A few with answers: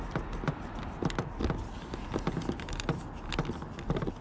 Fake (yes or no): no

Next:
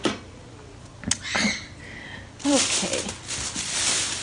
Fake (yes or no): no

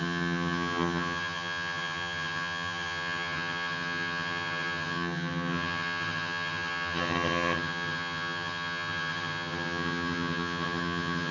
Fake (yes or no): yes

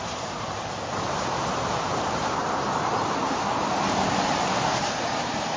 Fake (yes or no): yes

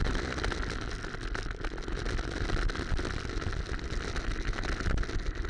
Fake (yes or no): no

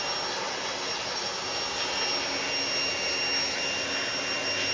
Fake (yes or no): no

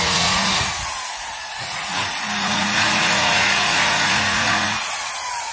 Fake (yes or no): yes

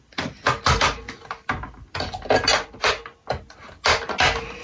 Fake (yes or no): no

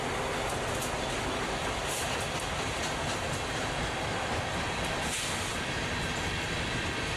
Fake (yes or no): no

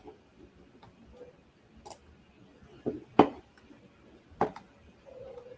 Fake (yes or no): no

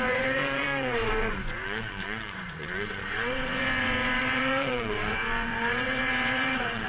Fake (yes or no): yes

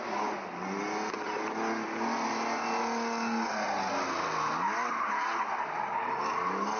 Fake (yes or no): no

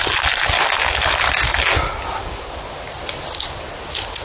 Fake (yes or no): no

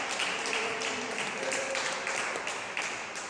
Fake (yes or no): no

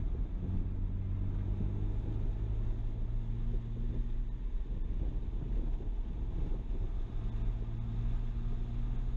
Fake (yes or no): no